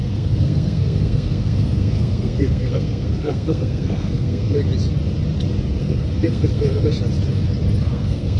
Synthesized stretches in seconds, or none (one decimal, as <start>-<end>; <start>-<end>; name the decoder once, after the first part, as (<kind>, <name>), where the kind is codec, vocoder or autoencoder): 0.0-4.6 (codec, SNAC); 5.8-6.9; 7.8-8.4